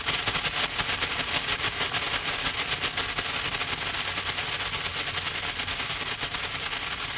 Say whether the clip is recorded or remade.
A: recorded